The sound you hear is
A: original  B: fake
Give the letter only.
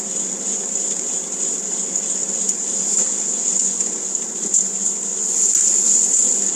A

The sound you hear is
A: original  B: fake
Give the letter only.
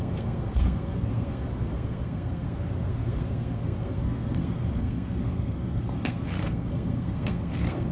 B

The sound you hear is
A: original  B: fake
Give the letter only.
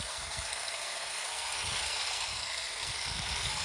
B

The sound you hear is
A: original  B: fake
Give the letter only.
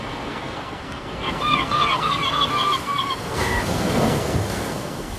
B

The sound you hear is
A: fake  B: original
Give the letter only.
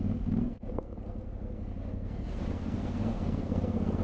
A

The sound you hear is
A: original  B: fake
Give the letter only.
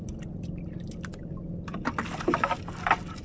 A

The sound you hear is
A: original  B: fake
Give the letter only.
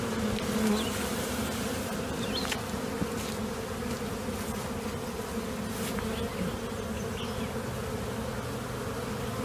A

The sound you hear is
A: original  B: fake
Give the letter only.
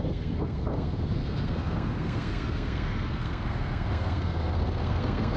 B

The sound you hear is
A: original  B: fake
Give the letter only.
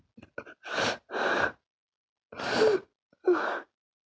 A